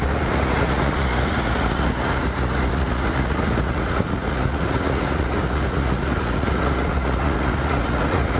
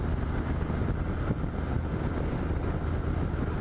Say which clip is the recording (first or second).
second